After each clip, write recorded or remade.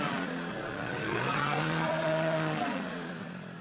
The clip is remade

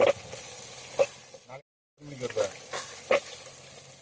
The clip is recorded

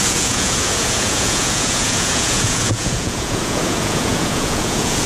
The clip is remade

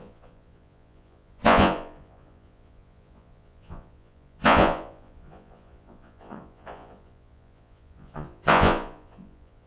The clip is remade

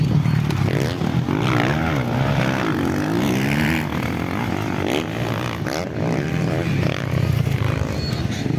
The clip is recorded